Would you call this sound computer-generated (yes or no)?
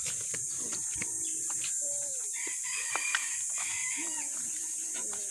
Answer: no